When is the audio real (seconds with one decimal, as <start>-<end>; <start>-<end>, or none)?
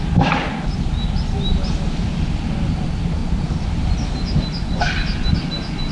0.0-5.9